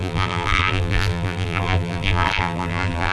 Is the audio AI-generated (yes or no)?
yes